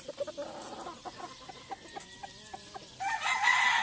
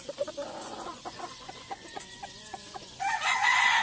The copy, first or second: second